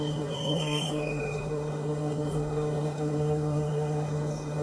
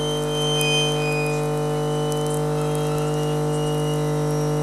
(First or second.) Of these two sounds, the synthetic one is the first